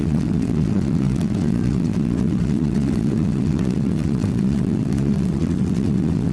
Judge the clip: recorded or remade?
remade